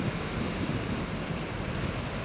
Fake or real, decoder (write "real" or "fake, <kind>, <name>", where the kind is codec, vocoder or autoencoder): fake, vocoder, BigVGAN v2